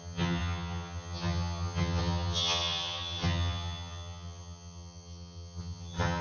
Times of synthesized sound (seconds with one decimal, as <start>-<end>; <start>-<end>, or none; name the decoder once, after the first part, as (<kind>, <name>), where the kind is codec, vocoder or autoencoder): 0.0-6.2 (vocoder, HiFi-GAN)